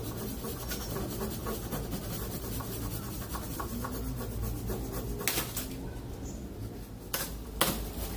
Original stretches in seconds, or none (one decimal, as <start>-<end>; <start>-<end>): 0.0-8.2